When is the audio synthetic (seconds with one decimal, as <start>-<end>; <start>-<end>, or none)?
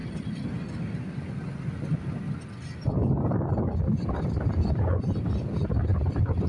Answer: 0.0-1.9; 5.9-6.5